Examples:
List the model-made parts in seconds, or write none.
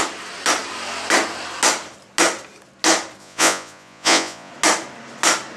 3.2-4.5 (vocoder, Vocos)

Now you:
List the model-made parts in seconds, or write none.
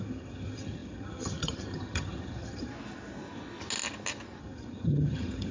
0.0-2.7 (vocoder, HiFi-GAN); 4.4-5.5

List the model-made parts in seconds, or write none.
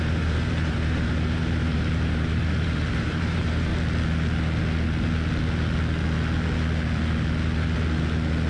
0.0-3.7 (vocoder, BigVGAN v2)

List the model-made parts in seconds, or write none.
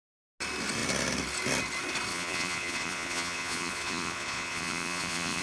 2.1-5.4 (vocoder, Vocos)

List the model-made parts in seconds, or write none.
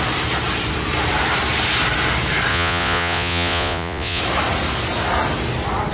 2.5-4.2 (vocoder, Vocos)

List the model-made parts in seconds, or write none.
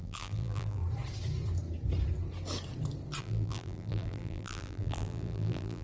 0.0-0.8 (vocoder, BigVGAN v2); 3.2-5.8